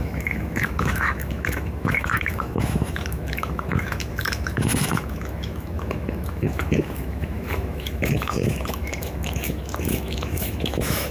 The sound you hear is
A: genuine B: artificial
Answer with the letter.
B